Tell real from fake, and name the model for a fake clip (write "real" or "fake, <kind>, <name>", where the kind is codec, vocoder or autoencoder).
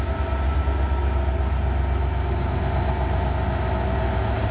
real